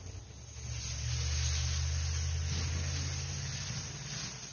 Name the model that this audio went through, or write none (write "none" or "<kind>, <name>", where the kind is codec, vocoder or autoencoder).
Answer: none